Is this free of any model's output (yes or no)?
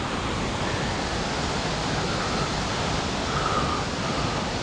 yes